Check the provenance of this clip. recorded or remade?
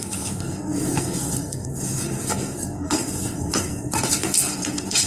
remade